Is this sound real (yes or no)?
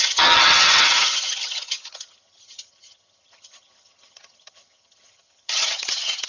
no